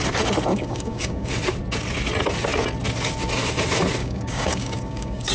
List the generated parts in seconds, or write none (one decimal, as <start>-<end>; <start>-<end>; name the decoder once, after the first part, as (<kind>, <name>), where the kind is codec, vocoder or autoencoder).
0.5-1.3 (codec, DAC); 4.0-5.3